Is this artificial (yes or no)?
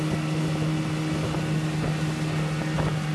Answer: no